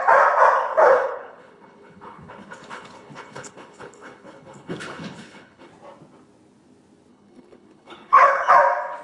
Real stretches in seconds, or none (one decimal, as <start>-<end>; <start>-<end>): 0.0-0.7; 5.7-7.1; 8.5-9.0